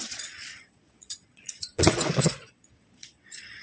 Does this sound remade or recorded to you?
remade